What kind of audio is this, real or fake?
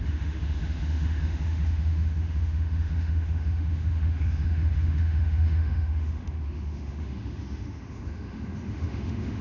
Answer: fake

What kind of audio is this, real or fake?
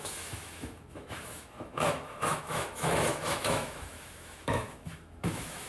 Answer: fake